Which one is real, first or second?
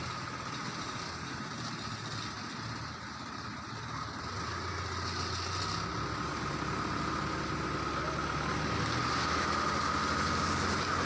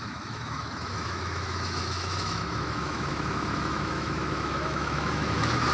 first